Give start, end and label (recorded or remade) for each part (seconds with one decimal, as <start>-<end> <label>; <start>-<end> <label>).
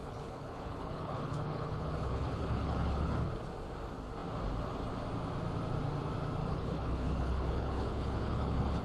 0.0-3.3 remade; 3.3-6.4 recorded; 6.4-8.8 remade